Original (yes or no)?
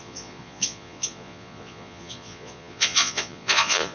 no